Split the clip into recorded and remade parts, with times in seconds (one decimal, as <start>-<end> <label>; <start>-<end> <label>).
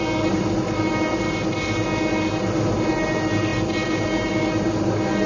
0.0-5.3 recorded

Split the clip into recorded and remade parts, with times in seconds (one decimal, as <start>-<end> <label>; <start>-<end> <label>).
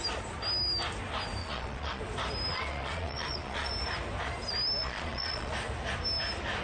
0.0-1.4 recorded; 1.4-2.0 remade; 2.0-2.5 recorded; 2.5-3.7 remade; 3.7-4.8 recorded; 4.8-5.5 remade; 5.5-6.6 recorded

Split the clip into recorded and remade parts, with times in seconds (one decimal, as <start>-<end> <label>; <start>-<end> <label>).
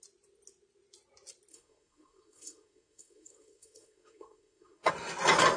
0.0-1.5 recorded; 1.5-4.9 remade; 4.9-5.6 recorded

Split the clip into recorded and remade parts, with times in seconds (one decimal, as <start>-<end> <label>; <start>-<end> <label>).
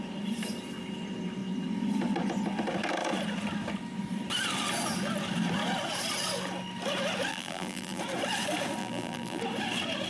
0.0-7.3 recorded; 7.3-8.0 remade; 8.0-8.8 recorded; 8.8-9.4 remade; 9.4-10.1 recorded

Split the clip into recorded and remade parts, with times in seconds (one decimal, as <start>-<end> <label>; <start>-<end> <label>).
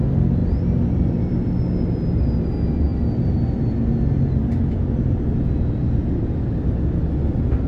0.0-7.7 recorded